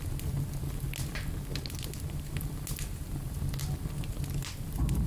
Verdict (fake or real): real